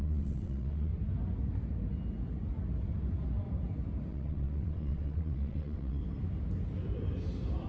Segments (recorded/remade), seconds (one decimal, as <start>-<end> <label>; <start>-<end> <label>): 0.0-0.9 remade; 0.9-4.1 recorded; 4.1-6.0 remade; 6.0-7.7 recorded